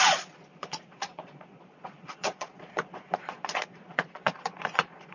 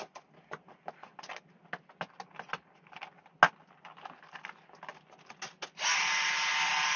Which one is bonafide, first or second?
second